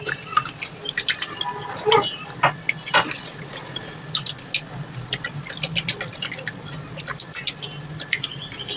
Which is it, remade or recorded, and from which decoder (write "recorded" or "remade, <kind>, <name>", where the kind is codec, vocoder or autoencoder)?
recorded